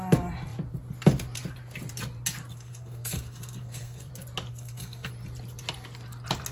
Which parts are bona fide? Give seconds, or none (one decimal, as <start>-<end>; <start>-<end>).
0.0-2.5; 4.1-4.5; 5.1-6.5